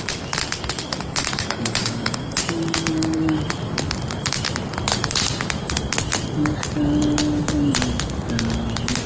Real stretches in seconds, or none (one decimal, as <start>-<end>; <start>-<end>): 0.0-1.8; 2.3-9.1